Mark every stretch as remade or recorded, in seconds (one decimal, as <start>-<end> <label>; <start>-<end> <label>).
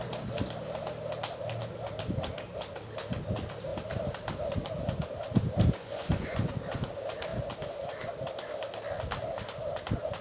0.0-5.8 recorded; 5.8-6.5 remade; 6.5-10.2 recorded